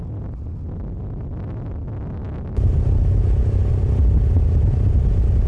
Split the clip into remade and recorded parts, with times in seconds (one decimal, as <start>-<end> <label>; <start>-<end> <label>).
0.0-5.5 recorded